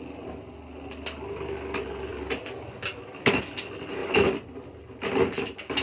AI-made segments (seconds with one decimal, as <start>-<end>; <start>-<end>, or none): none